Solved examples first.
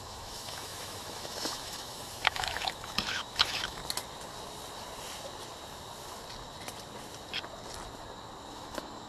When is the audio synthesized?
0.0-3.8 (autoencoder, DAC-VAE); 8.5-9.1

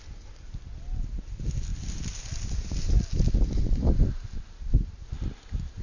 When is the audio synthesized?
none

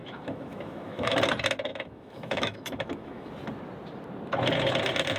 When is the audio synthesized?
0.0-1.2 (autoencoder, DAC-VAE); 1.7-3.3

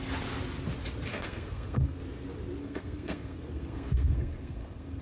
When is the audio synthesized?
1.1-2.0 (codec, SNAC); 2.6-5.0